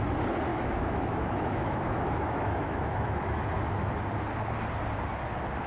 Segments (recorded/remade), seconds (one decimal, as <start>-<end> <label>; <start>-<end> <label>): 0.0-0.5 recorded; 0.5-3.9 remade; 3.9-5.7 recorded